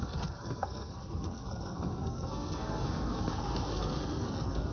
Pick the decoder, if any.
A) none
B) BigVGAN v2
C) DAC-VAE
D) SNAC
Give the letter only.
D